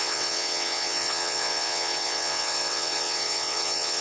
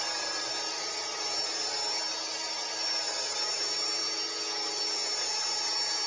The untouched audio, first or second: second